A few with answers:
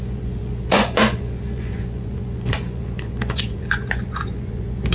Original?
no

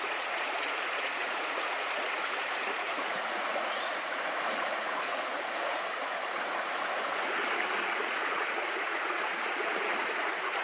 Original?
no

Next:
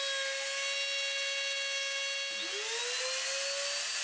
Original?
yes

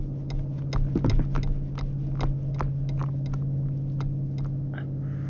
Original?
yes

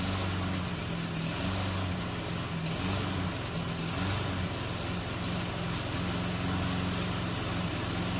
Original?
yes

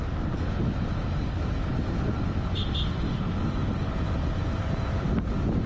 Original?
yes